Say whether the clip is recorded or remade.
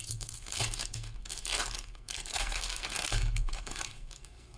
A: remade